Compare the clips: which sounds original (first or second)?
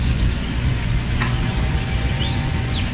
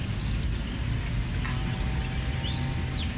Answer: second